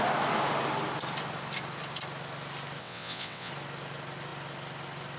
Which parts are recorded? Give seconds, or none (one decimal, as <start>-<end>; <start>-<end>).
0.0-2.8; 3.5-5.2